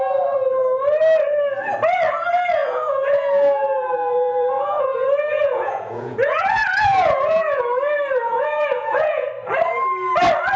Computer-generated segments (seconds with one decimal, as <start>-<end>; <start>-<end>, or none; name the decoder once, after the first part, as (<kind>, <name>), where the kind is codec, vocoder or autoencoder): 2.6-7.6 (vocoder, Vocos); 8.2-9.3